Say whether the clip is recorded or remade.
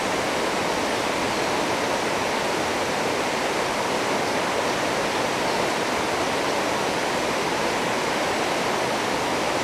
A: recorded